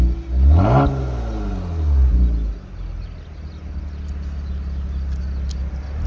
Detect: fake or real real